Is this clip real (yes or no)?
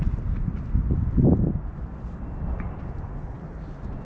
yes